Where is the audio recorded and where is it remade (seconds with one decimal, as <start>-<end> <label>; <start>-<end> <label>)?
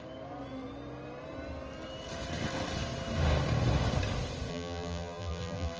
0.0-4.5 recorded; 4.5-5.8 remade